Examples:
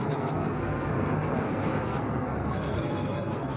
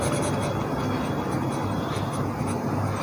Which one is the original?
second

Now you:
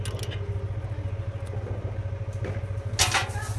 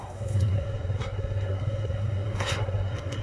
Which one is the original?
first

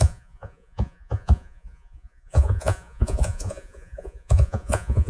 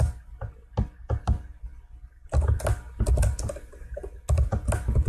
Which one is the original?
second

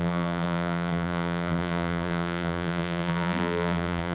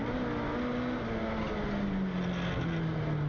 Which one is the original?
second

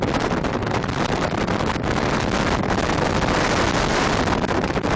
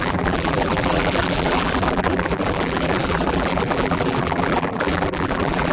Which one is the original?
first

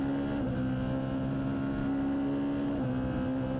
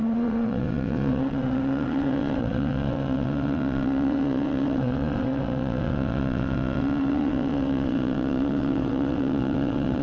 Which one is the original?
first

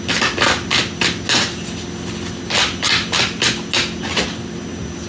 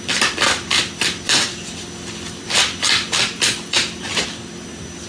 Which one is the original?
first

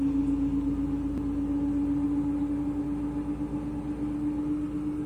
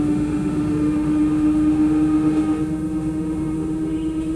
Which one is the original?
first